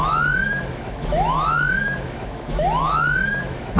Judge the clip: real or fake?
fake